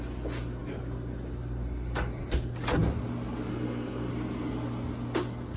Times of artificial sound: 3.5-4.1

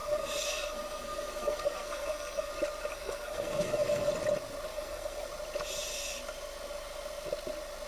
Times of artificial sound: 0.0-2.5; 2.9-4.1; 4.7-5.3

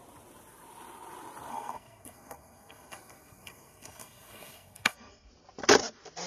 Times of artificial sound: 1.5-5.3